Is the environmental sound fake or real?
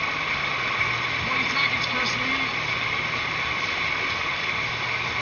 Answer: real